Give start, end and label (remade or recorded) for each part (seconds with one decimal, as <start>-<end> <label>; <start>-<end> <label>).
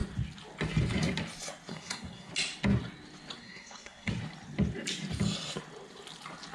0.0-1.7 recorded; 1.7-2.3 remade; 2.3-3.4 recorded; 3.4-4.1 remade; 4.1-6.5 recorded